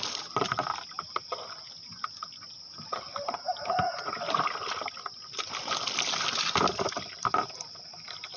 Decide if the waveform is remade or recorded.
recorded